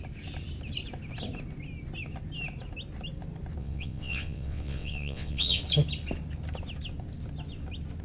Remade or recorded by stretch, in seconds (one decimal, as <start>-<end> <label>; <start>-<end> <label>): 0.0-3.6 recorded; 3.6-5.6 remade; 5.6-8.0 recorded